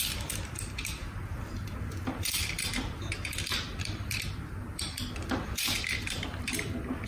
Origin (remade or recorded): remade